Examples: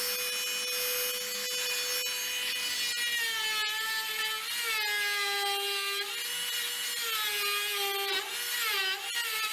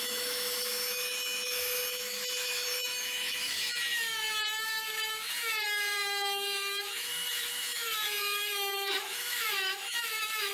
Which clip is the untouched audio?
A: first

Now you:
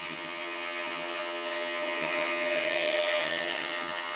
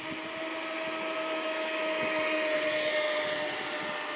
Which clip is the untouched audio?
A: second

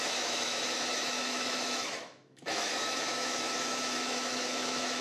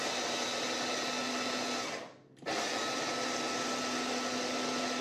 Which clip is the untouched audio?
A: second